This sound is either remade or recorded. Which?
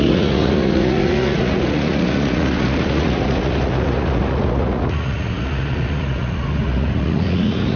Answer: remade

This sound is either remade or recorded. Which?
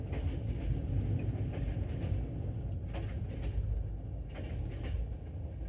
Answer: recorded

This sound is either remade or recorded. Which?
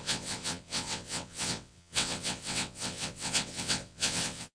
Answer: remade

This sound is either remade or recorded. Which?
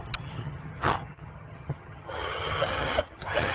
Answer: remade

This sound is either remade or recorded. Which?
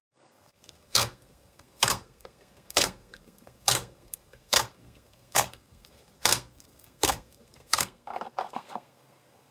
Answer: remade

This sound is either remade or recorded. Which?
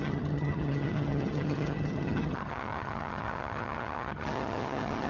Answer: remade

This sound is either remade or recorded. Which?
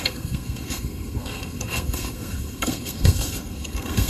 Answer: remade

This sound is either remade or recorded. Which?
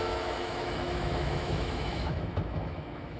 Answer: remade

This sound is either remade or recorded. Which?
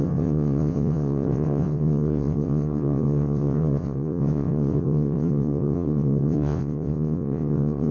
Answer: remade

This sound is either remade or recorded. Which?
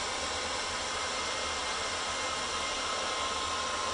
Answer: recorded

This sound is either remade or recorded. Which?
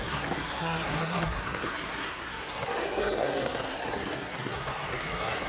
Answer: remade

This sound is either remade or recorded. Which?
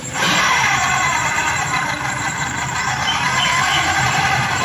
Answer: remade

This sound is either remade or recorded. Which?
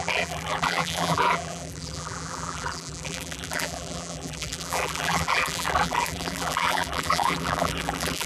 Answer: remade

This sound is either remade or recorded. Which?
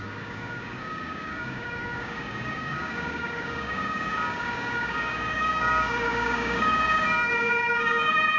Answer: remade